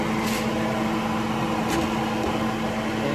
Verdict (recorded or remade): recorded